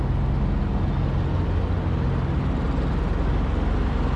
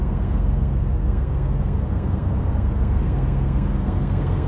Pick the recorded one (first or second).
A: first